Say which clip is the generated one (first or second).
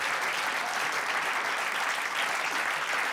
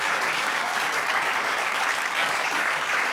second